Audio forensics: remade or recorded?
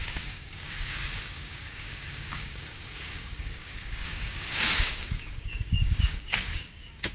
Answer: remade